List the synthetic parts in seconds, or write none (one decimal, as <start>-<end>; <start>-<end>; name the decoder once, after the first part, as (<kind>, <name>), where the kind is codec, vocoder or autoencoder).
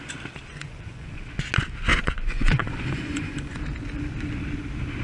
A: 0.5-1.2 (vocoder, Vocos); 1.9-3.6